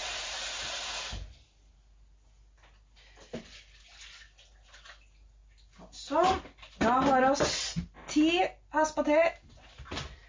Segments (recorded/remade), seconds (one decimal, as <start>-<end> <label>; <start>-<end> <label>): 0.0-0.5 remade; 0.5-10.3 recorded